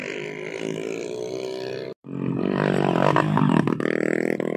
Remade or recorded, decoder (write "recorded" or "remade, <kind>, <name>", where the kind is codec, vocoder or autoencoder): recorded